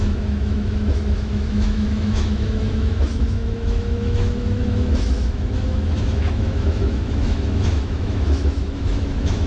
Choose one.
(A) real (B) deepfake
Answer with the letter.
B